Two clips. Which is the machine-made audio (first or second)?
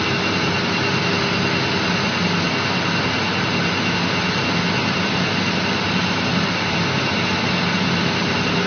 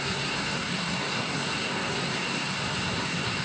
second